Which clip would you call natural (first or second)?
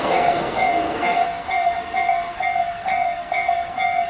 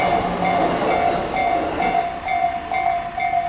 second